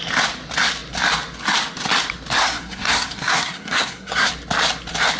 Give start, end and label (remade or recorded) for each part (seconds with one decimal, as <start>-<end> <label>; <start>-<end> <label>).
0.0-2.4 recorded; 2.4-4.3 remade; 4.3-5.2 recorded